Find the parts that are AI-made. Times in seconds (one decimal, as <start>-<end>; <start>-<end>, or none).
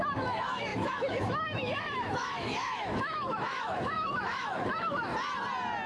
0.0-5.1